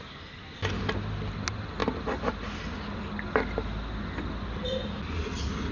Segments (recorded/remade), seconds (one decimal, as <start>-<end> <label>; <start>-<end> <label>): 0.0-5.7 recorded

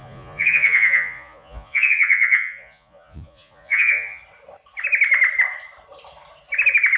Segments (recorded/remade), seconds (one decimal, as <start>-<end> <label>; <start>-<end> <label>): 0.0-4.2 remade; 4.2-7.0 recorded